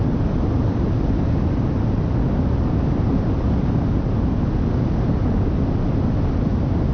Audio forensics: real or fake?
real